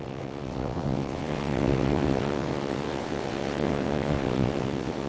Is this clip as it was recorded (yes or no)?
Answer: no